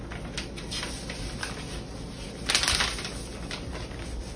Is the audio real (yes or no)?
yes